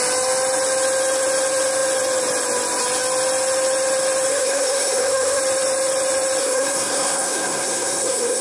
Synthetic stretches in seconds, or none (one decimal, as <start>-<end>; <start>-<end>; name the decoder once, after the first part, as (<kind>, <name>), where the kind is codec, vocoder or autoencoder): 4.3-5.4 (codec, SNAC); 6.4-8.4